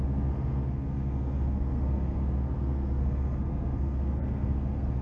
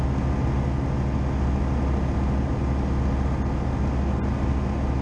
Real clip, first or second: second